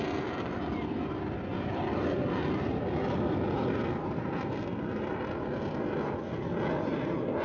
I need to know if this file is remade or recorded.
recorded